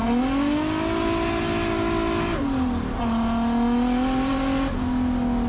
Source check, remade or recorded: recorded